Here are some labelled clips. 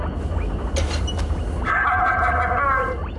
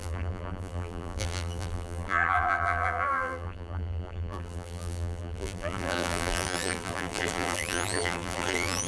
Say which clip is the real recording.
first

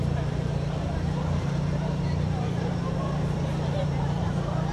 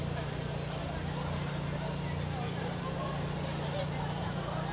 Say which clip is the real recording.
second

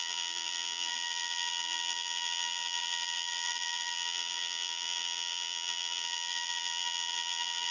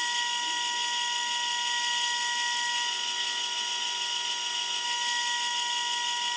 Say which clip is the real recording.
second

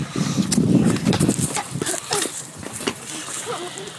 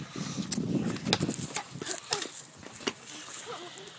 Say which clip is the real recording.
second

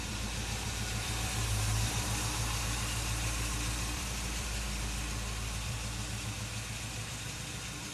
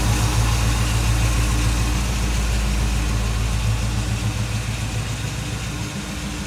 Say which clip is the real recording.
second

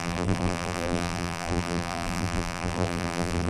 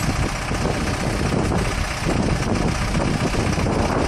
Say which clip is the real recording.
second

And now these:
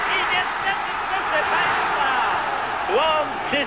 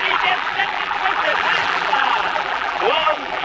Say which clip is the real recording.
first